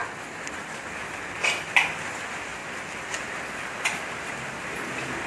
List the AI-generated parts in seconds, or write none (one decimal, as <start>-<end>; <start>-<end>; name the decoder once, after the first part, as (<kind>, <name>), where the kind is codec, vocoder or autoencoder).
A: none